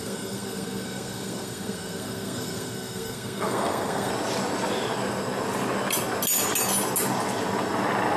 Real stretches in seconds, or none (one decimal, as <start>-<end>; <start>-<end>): 4.1-8.2